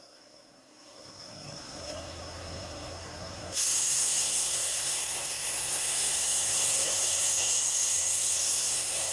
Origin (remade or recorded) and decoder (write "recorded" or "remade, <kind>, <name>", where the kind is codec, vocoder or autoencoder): remade, codec, SNAC